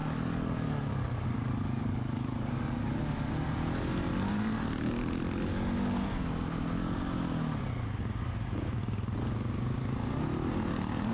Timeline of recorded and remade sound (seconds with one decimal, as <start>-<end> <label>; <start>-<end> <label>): 0.0-2.7 remade; 2.7-11.1 recorded